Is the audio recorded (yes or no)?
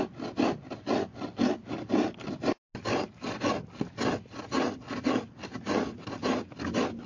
yes